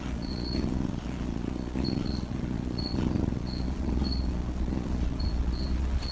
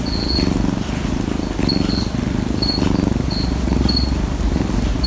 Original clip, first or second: second